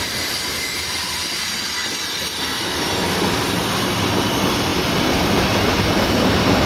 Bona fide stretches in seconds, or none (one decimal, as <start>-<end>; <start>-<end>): 0.0-4.7